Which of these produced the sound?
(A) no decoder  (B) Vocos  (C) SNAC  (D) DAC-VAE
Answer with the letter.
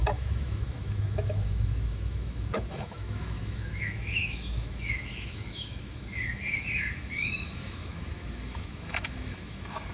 D